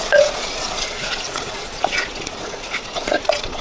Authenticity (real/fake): fake